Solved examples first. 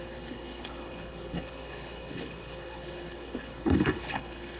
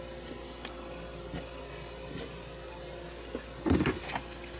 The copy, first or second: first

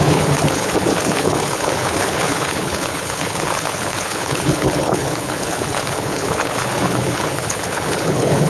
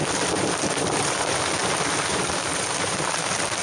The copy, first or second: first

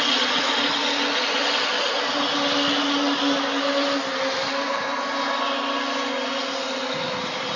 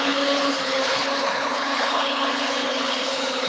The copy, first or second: second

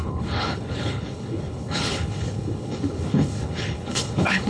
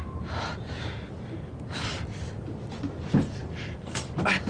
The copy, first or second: first